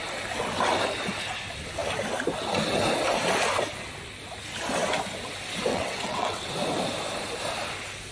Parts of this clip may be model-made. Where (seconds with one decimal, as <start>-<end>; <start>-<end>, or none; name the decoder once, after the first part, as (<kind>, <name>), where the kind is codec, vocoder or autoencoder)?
5.7-6.5 (vocoder, WaveNeXt)